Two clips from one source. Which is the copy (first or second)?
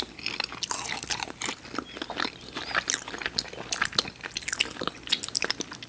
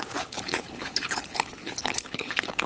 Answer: second